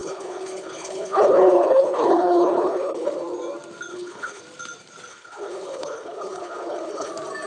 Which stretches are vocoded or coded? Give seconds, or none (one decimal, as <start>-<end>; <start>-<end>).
0.0-3.1; 3.9-4.4; 5.1-7.1